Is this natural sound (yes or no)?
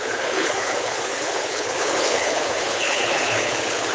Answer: no